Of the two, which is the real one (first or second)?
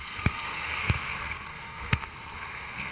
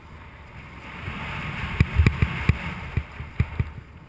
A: second